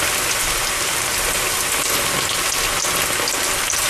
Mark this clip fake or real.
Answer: real